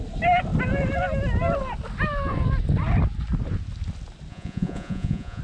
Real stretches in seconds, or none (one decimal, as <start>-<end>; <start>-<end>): 0.0-4.3

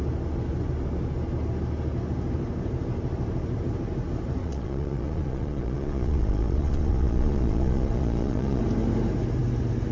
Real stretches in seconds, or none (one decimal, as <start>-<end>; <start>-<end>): 0.0-4.4; 8.6-9.9

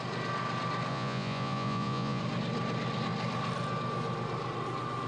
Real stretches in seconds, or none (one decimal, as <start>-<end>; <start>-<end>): 0.0-0.9; 2.2-5.1

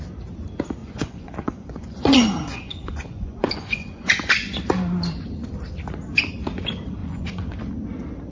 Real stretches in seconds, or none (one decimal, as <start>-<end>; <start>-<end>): 0.0-0.8; 4.6-7.0; 7.6-8.3

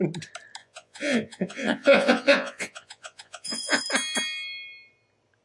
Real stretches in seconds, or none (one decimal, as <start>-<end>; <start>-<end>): 0.0-0.6; 3.8-5.4

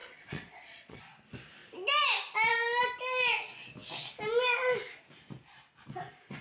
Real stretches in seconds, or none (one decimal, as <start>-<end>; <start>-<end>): 1.0-6.4